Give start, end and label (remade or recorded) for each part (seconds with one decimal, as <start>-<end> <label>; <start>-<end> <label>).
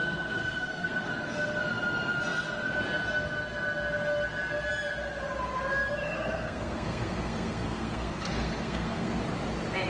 0.0-1.1 remade; 1.1-6.0 recorded; 6.0-9.2 remade; 9.2-9.9 recorded